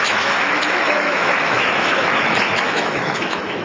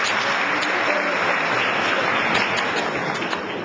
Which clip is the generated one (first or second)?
first